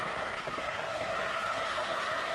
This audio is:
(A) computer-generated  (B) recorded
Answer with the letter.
A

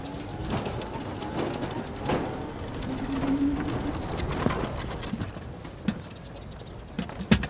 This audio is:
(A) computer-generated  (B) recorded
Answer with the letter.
B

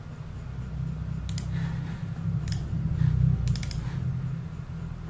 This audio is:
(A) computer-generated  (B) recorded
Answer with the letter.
B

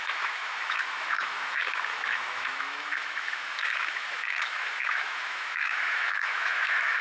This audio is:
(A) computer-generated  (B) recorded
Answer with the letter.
A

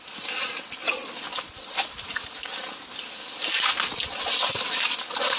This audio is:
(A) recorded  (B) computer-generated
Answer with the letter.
A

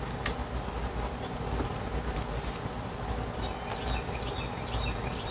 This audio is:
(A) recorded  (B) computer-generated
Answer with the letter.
A